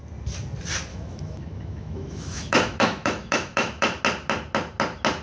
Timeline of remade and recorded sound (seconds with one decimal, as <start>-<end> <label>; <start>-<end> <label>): 0.0-0.9 recorded; 0.9-4.0 remade; 4.0-5.2 recorded